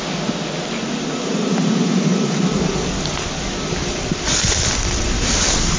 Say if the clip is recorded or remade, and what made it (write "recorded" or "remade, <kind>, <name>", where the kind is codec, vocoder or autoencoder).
recorded